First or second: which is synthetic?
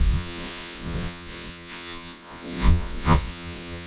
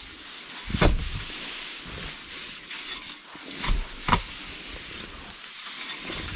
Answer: first